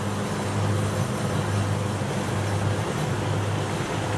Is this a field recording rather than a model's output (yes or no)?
yes